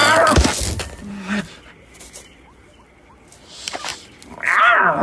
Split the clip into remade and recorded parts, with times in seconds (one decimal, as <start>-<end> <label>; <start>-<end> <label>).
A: 0.0-5.0 recorded